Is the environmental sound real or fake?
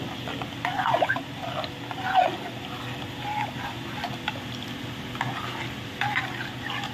real